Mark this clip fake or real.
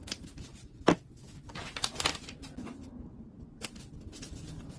real